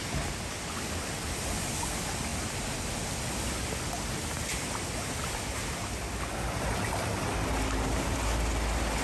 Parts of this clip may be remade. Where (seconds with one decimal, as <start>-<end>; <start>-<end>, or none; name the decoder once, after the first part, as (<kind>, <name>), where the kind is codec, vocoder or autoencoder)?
none